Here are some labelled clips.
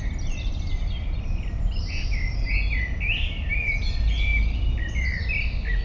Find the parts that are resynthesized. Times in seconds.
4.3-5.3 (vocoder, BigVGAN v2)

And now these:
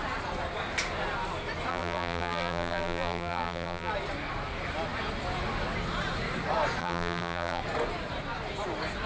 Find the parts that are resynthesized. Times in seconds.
1.7-3.9 (vocoder, BigVGAN v2); 6.8-7.6

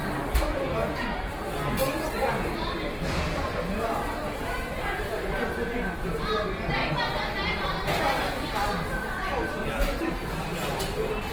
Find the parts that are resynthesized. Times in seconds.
none